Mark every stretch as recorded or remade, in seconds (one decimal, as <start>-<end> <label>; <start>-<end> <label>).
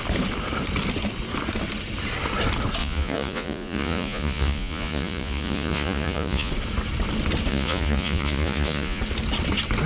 0.0-2.8 recorded; 2.8-6.5 remade; 6.5-7.5 recorded; 7.5-9.0 remade; 9.0-9.9 recorded